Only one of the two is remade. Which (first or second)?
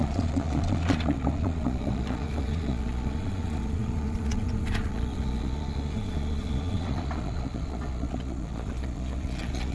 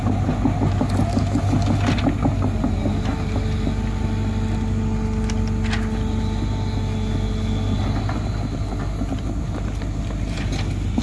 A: first